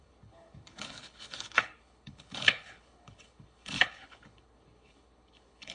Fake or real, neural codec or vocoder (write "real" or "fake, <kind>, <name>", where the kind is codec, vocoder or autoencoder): fake, codec, HILCodec